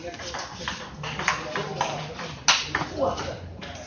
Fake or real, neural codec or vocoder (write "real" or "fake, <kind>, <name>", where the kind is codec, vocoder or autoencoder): real